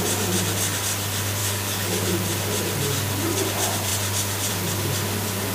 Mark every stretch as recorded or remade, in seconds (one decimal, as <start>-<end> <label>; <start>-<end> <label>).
0.0-1.4 recorded; 1.4-2.1 remade; 2.1-5.5 recorded